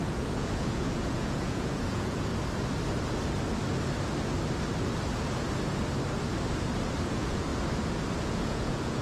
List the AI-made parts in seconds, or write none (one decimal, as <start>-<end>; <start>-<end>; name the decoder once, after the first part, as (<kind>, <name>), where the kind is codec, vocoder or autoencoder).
0.0-2.3 (vocoder, Vocos); 7.0-7.5; 8.2-9.0